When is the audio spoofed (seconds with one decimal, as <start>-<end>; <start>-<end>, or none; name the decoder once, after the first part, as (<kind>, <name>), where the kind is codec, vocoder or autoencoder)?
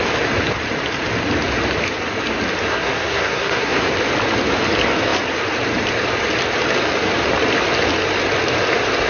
2.7-3.9 (codec, SNAC)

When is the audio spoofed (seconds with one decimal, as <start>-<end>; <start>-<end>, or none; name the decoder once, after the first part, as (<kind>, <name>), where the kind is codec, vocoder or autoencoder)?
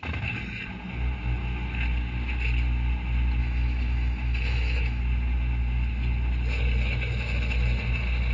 3.4-5.0 (autoencoder, DAC-VAE)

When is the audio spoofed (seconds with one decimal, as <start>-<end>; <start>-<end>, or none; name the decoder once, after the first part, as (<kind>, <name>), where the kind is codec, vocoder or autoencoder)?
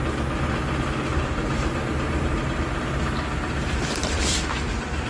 1.1-1.8 (vocoder, BigVGAN v2); 3.6-4.2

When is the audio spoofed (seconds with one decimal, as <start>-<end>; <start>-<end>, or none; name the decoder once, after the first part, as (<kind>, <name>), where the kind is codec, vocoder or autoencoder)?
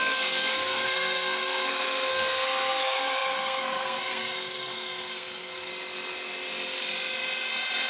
0.0-5.7 (codec, SNAC)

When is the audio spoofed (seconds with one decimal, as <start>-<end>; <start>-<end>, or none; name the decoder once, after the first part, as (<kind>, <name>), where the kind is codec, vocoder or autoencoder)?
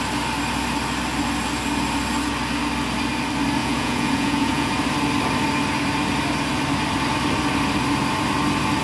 3.6-4.7 (vocoder, Vocos)